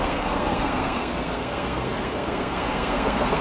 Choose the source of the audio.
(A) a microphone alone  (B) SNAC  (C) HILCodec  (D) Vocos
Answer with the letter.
B